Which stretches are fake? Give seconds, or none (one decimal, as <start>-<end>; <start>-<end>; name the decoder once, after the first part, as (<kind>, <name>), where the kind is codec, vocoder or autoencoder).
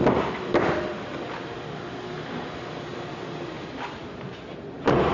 none